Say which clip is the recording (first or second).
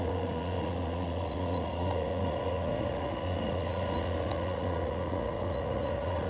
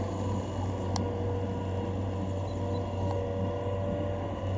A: second